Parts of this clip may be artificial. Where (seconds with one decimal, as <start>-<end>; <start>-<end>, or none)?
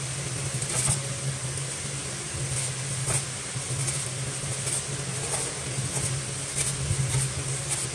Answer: none